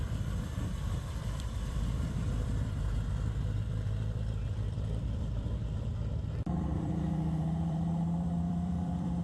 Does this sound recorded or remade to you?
remade